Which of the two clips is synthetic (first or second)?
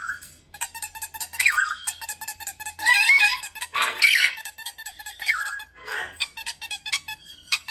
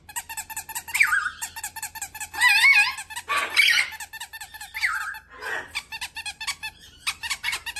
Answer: first